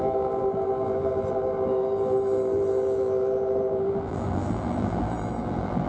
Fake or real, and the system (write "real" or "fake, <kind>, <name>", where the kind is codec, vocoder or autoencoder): fake, vocoder, BigVGAN v2